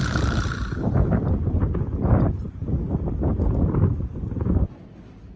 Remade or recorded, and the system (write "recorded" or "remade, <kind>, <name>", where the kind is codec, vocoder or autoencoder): recorded